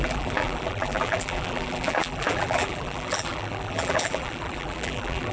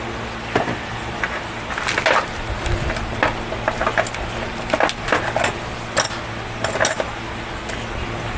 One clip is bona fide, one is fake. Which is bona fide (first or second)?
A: second